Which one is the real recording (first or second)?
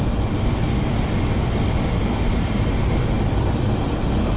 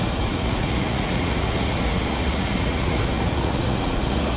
first